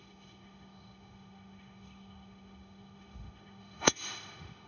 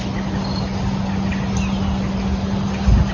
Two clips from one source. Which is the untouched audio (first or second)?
second